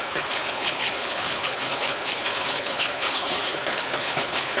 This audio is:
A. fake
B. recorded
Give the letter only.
A